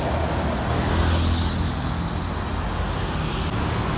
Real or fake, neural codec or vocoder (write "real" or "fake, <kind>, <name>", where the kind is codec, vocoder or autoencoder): real